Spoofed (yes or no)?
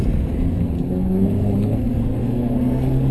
yes